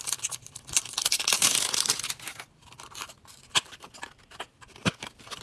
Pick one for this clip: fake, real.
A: real